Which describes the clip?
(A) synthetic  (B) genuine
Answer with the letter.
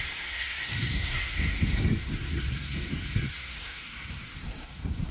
A